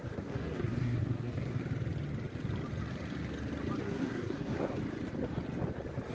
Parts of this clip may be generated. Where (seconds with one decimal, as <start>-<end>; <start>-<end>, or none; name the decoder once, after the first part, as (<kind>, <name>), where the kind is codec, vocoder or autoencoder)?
0.0-1.6 (codec, SNAC); 3.8-4.7